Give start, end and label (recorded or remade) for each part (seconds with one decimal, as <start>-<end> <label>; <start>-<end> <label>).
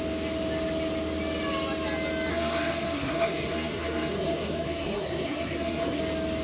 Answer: 0.0-2.3 recorded; 2.3-6.0 remade; 6.0-6.4 recorded